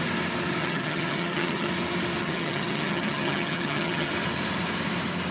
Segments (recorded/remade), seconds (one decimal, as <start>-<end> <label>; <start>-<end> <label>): 0.0-0.6 recorded; 0.6-1.7 remade; 1.7-2.2 recorded; 2.2-4.1 remade; 4.1-5.3 recorded